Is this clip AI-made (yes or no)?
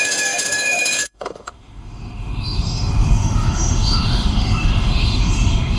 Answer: yes